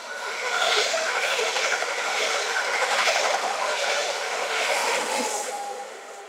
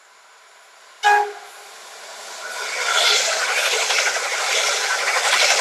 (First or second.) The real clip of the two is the second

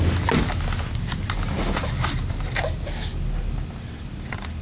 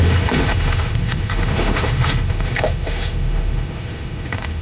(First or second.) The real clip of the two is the first